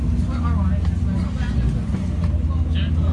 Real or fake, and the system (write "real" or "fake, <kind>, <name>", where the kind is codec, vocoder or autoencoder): real